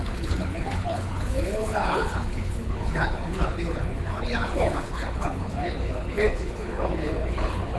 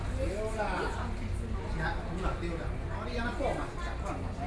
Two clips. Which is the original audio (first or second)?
second